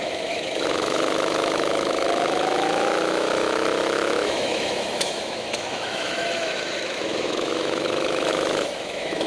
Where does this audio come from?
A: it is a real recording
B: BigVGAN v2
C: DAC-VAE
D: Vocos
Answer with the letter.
C